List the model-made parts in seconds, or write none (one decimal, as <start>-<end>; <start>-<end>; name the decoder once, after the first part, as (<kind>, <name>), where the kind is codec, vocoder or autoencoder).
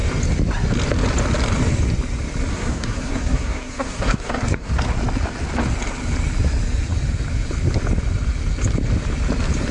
2.5-4.7 (codec, SNAC)